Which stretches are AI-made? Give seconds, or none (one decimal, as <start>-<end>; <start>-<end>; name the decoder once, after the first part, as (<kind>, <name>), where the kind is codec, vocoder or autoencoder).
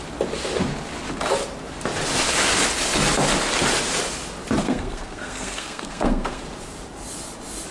4.6-6.4 (codec, SNAC)